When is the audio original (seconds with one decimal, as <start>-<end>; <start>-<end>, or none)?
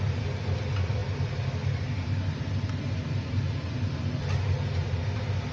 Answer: 0.0-5.5